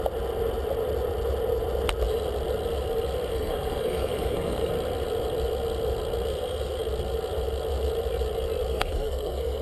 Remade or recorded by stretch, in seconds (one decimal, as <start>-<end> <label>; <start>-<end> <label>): 0.0-3.3 recorded; 3.3-4.7 remade; 4.7-8.7 recorded; 8.7-9.6 remade